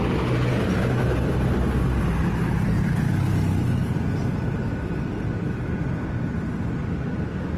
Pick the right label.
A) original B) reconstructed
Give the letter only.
A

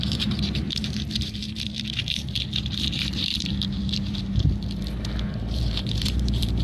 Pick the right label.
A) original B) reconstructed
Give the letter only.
B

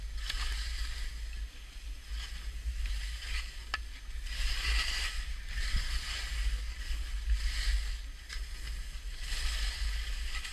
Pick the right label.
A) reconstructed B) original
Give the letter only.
B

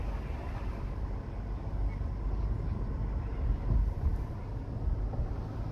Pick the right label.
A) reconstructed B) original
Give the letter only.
B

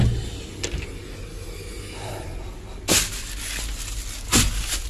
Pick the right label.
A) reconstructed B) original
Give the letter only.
B